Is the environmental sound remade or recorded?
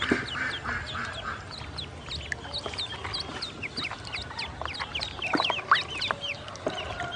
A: recorded